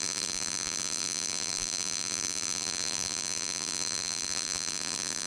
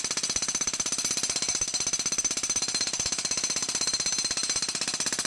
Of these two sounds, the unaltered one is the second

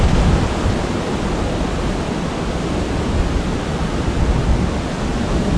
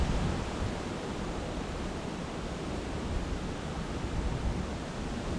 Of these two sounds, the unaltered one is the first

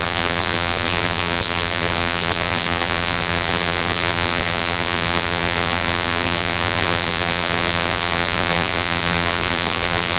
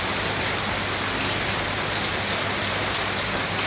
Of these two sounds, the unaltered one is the second